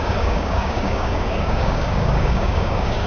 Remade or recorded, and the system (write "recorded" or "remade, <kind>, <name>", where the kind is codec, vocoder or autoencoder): remade, codec, DAC